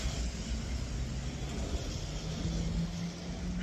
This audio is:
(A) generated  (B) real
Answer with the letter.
B